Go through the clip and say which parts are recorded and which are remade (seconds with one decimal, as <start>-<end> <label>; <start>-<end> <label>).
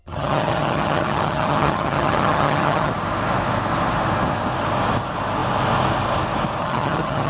0.0-2.9 remade; 2.9-6.6 recorded; 6.6-7.3 remade